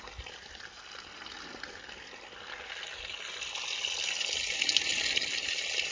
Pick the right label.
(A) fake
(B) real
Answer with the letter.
B